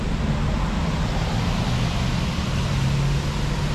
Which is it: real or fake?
real